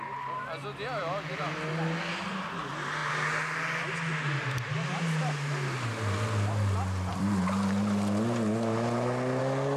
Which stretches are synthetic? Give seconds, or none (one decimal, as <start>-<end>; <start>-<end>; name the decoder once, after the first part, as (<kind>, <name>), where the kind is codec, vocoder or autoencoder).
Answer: none